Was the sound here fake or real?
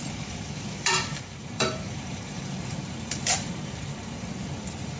fake